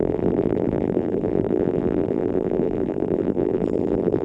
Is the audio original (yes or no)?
no